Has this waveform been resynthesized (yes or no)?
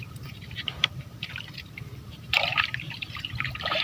yes